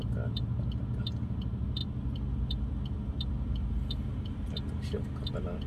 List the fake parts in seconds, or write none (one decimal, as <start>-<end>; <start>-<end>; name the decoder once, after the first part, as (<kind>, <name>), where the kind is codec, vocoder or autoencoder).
none